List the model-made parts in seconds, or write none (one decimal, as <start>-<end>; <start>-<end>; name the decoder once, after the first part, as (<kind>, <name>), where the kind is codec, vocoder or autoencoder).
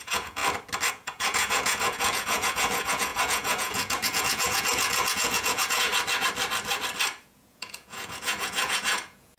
0.0-0.4 (vocoder, Vocos); 0.9-5.9; 7.2-9.4